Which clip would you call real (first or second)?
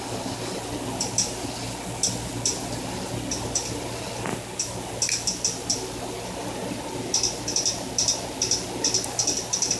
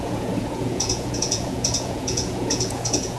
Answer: first